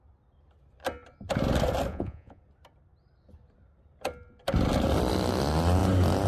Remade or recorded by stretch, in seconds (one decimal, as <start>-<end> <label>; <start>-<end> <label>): 0.0-1.9 recorded; 1.9-2.4 remade; 2.4-6.3 recorded

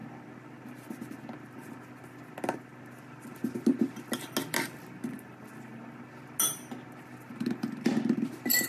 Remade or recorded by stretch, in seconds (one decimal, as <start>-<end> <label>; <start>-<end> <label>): 0.0-8.7 recorded